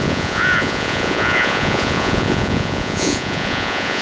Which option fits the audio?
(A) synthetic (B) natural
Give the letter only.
A